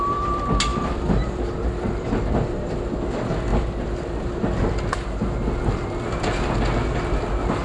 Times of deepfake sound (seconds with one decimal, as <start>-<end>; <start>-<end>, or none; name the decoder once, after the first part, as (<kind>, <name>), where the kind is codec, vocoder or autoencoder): 0.7-2.1 (vocoder, BigVGAN v2)